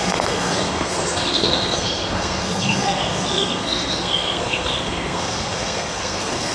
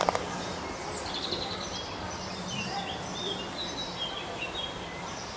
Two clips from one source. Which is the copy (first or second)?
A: first